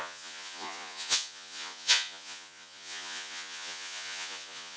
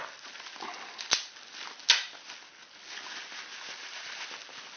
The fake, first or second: first